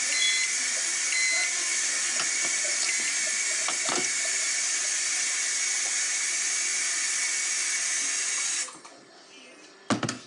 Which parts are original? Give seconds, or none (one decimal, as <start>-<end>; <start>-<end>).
0.0-1.7; 5.0-6.7; 7.3-10.3